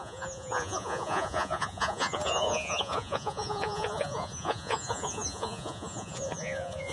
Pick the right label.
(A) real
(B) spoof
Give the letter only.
B